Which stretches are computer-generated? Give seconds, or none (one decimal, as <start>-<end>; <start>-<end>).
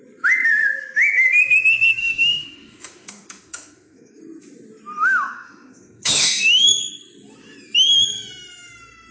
2.0-4.2; 5.0-6.8